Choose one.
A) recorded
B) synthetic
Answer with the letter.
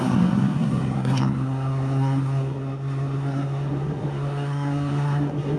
B